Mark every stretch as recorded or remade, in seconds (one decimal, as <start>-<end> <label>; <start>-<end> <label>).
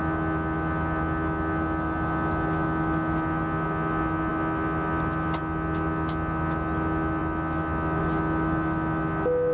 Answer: 0.0-9.5 recorded